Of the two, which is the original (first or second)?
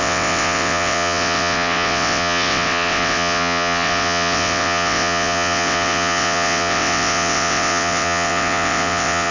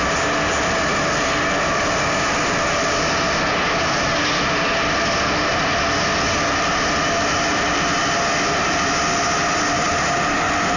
second